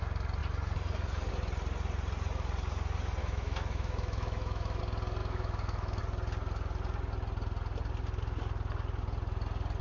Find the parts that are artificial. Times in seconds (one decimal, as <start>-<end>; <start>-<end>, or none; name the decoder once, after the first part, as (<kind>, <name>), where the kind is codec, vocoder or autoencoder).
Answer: 3.2-4.8 (autoencoder, DAC-VAE); 5.2-6.0